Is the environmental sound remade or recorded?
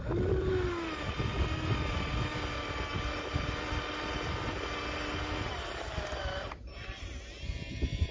recorded